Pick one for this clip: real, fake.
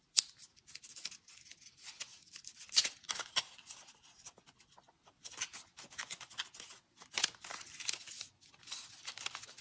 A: real